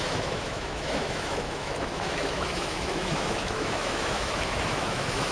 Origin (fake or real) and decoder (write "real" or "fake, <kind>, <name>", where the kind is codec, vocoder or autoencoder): fake, autoencoder, DAC-VAE